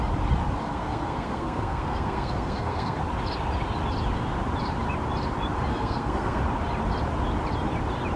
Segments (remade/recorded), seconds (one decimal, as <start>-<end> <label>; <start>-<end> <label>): 0.0-0.6 recorded; 0.6-3.0 remade; 3.0-5.7 recorded; 5.7-6.4 remade; 6.4-8.2 recorded